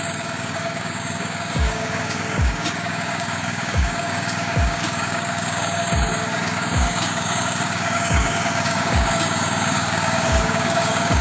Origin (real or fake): fake